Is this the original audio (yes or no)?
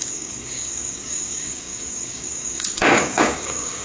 no